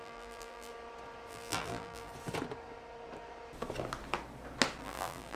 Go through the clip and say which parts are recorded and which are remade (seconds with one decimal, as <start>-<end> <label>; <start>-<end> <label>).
0.0-0.7 remade; 0.7-1.3 recorded; 1.3-2.1 remade; 2.1-4.8 recorded; 4.8-5.4 remade